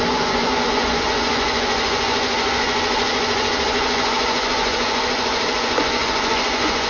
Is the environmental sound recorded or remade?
remade